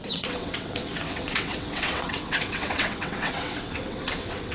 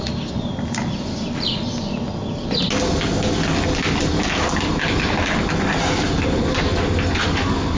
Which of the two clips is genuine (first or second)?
second